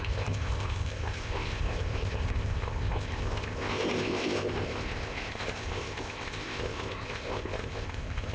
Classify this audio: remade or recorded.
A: remade